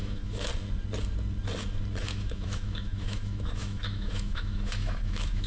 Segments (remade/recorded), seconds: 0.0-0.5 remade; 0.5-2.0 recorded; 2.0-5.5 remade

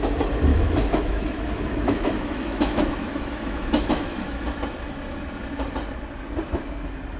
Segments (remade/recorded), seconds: 0.0-0.5 recorded; 0.5-4.4 remade; 4.4-7.2 recorded

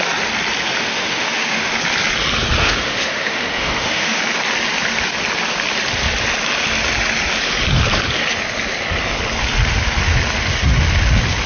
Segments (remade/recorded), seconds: 0.0-0.8 recorded; 0.8-1.7 remade; 1.7-2.6 recorded; 2.6-4.2 remade; 4.2-11.5 recorded

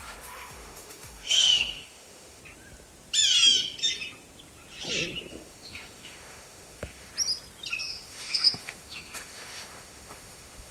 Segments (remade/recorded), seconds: 0.0-2.4 remade; 2.4-5.3 recorded; 5.3-7.1 remade; 7.1-7.8 recorded; 7.8-10.7 remade

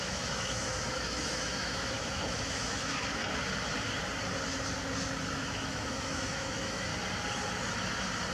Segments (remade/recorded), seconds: 0.0-3.2 remade; 3.2-5.3 recorded; 5.3-6.9 remade; 6.9-8.3 recorded

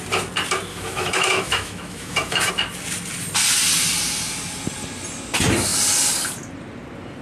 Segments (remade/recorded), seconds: 0.0-0.7 recorded; 0.7-2.5 remade; 2.5-7.2 recorded

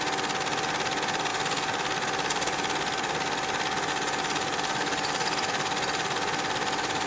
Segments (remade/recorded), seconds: 0.0-7.1 recorded